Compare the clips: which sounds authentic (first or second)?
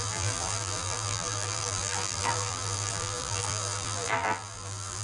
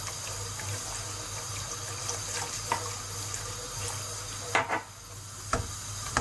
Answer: second